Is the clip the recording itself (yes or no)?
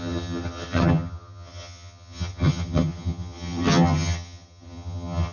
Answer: no